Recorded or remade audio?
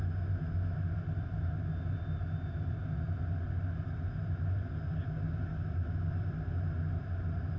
recorded